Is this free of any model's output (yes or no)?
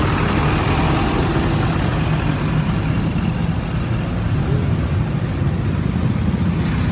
yes